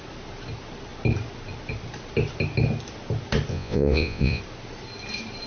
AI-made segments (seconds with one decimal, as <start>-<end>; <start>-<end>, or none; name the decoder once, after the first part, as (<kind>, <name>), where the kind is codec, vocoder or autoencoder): 3.5-4.4 (vocoder, Vocos)